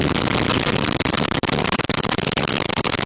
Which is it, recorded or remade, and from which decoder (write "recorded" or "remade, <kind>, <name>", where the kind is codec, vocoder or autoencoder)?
recorded